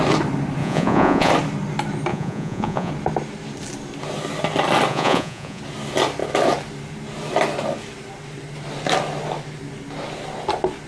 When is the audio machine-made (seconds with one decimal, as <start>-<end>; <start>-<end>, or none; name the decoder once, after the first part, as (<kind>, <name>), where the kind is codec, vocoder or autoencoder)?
0.6-1.3 (vocoder, Vocos); 2.1-2.9; 4.9-5.6